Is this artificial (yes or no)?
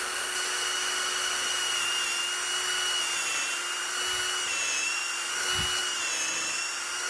no